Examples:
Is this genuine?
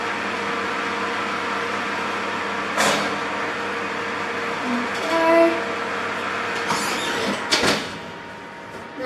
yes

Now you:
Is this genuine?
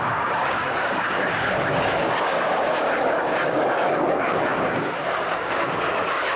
no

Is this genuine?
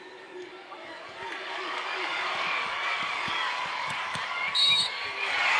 no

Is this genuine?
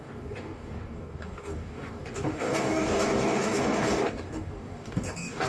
no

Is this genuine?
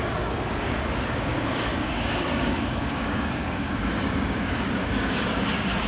no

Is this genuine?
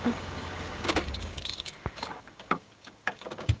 no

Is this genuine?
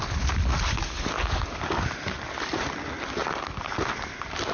yes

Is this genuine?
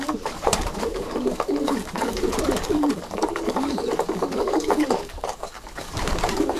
no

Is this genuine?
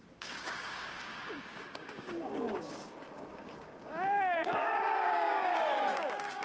no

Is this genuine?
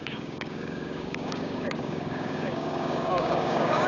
no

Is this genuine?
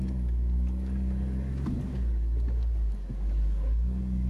no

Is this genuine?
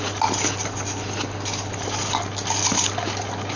yes